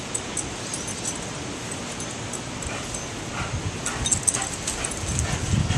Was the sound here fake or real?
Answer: real